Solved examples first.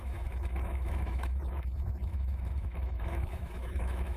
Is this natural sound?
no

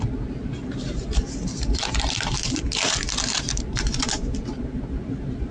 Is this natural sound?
no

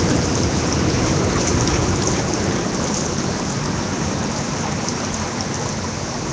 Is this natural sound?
yes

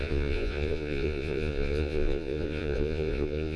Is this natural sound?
no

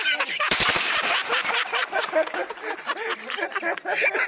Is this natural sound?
yes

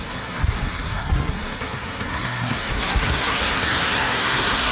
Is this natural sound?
no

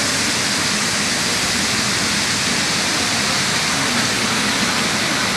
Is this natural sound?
yes